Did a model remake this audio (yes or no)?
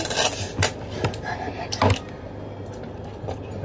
no